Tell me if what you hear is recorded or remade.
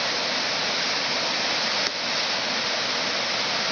recorded